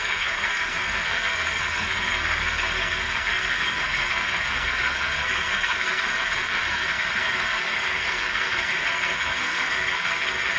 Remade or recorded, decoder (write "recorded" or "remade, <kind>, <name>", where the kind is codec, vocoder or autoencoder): remade, codec, SNAC